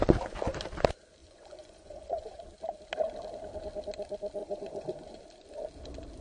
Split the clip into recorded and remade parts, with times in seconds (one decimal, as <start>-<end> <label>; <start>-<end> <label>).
0.0-1.2 recorded; 1.2-2.4 remade; 2.4-4.4 recorded; 4.4-5.2 remade; 5.2-6.2 recorded